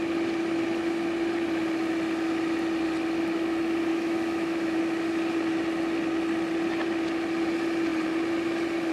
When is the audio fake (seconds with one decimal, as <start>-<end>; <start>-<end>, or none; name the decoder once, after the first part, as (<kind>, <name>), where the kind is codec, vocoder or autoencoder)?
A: 3.9-4.8 (autoencoder, DAC-VAE)